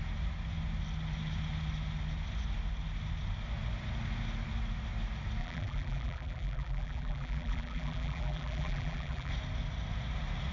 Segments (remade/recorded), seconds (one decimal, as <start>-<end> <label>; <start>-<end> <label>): 0.0-5.4 recorded; 5.4-9.3 remade; 9.3-10.5 recorded